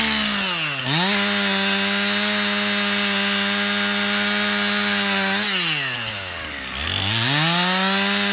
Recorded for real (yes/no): yes